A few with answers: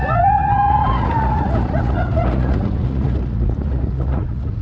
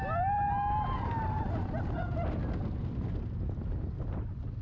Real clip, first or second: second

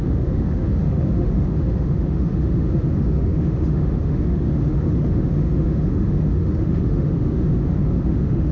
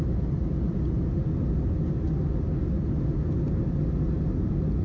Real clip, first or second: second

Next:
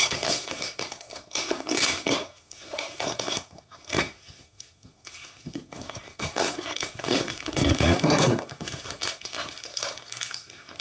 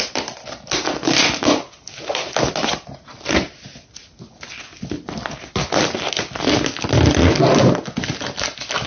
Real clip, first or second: second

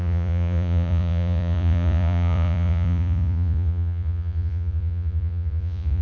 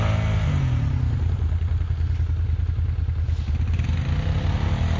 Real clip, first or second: second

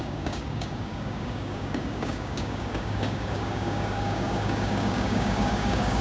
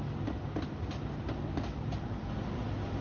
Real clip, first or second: second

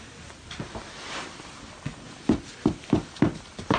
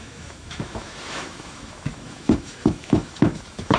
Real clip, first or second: first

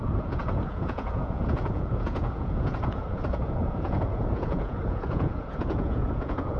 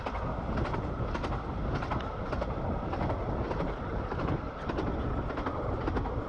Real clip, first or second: second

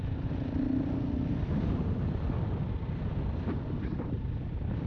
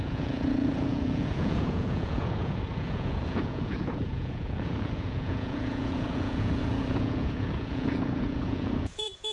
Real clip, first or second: first